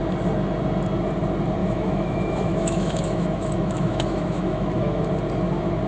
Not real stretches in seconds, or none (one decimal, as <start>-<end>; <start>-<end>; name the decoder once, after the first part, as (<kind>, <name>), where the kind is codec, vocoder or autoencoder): 1.6-5.1 (autoencoder, DAC-VAE)